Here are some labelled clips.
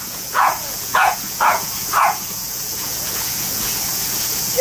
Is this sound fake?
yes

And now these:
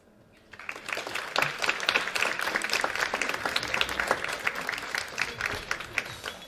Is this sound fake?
no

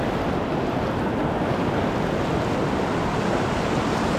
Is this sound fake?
no